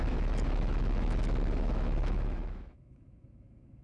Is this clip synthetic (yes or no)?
yes